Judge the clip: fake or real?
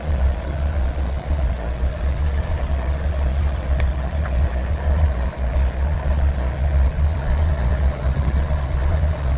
fake